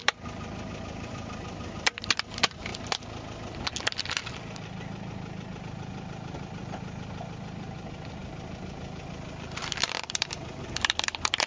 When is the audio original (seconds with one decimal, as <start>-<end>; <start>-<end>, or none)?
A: 2.7-5.6